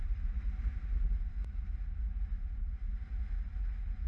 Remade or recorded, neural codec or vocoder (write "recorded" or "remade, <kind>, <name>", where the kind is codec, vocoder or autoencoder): recorded